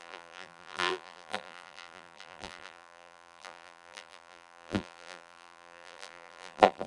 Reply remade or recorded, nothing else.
remade